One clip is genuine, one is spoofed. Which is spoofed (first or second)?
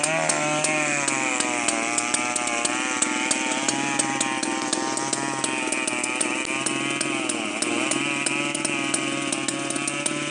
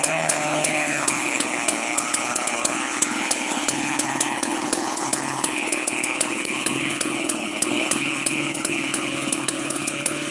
second